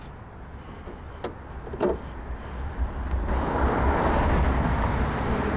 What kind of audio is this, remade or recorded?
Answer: recorded